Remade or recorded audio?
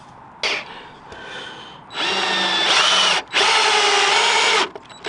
recorded